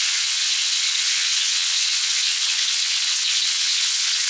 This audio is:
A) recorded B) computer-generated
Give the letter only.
B